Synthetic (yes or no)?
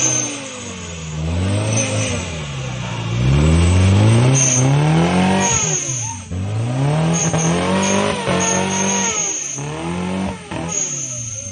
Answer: no